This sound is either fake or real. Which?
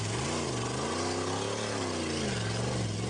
real